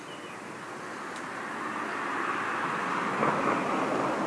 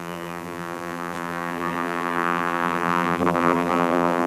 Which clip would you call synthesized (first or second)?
second